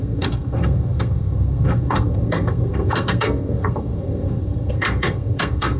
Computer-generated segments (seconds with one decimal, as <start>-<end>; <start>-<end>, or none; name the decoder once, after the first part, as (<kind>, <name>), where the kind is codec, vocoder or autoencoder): 0.0-5.8 (codec, SNAC)